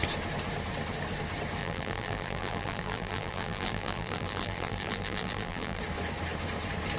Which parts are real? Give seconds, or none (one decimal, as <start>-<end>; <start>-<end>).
0.0-1.6; 5.8-7.0